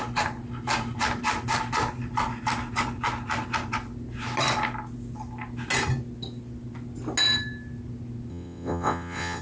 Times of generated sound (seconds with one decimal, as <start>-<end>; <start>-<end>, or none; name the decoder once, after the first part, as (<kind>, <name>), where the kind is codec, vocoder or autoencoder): 8.3-9.4 (vocoder, WaveNeXt)